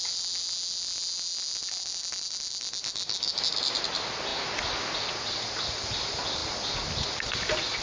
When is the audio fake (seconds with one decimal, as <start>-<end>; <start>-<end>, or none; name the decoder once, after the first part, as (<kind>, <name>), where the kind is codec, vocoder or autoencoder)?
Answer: none